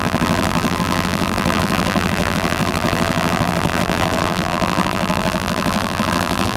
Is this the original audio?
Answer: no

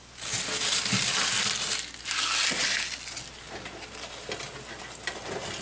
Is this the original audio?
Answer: yes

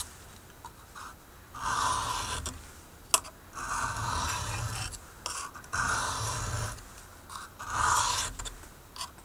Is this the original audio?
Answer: yes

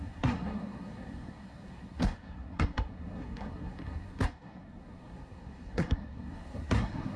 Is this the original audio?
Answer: no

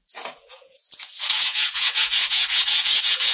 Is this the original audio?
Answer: no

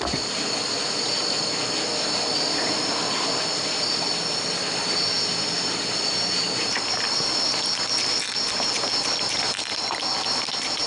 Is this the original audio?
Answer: yes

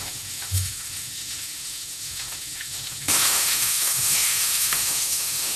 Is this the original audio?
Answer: no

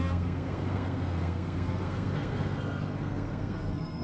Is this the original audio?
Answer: no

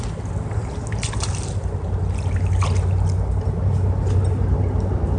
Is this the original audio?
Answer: yes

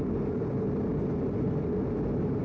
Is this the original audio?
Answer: yes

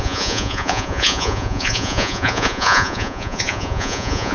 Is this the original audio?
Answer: no